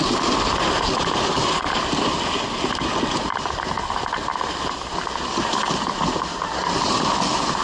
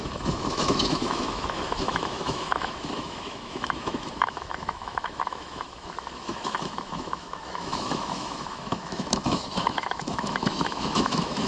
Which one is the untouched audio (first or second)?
first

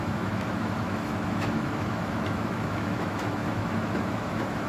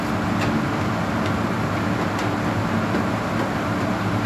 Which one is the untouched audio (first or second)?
second